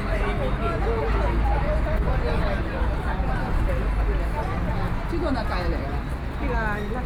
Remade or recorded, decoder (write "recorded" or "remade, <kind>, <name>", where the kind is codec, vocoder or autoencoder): recorded